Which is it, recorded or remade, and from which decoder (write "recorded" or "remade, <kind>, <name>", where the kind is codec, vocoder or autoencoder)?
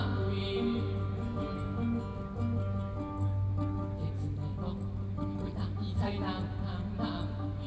recorded